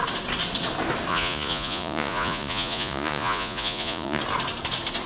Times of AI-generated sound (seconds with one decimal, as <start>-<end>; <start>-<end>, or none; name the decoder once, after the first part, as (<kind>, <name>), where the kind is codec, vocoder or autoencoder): 1.1-4.2 (vocoder, Vocos)